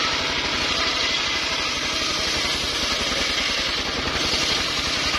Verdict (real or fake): real